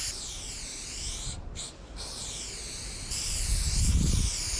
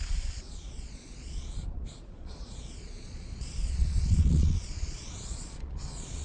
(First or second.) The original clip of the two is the first